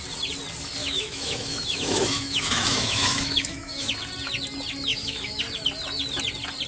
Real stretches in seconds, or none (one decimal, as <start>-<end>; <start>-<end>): 0.0-0.8; 3.9-4.9; 5.4-6.7